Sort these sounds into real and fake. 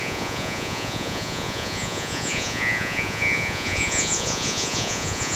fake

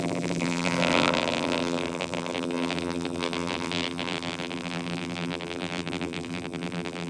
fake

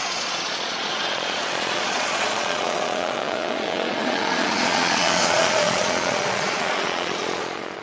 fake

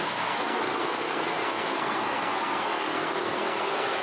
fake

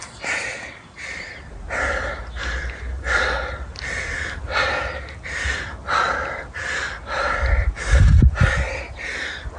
real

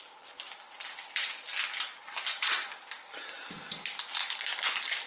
real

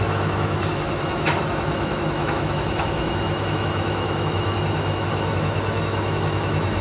fake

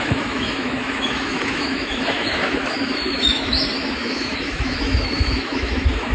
fake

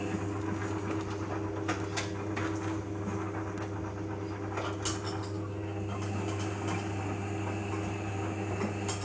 real